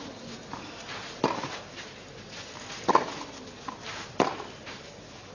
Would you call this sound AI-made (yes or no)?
no